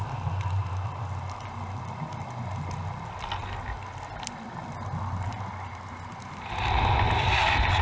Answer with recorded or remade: recorded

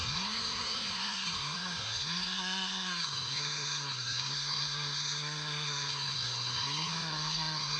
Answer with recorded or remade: remade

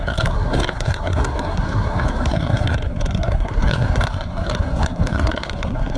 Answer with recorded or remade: remade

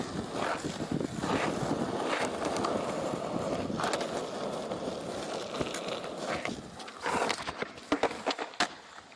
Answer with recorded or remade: recorded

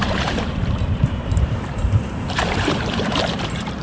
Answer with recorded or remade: remade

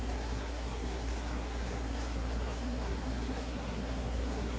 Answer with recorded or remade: remade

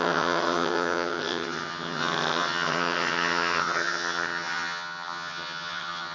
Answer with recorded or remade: remade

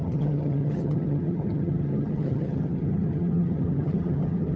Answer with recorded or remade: remade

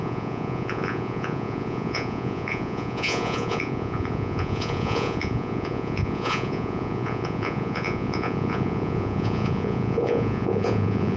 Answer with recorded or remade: remade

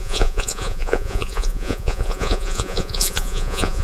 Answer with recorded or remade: remade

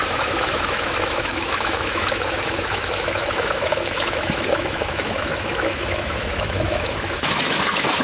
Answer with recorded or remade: remade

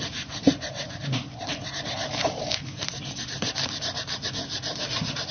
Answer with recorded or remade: remade